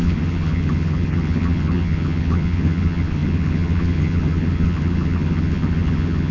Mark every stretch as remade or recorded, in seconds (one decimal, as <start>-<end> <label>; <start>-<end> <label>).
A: 0.0-6.3 remade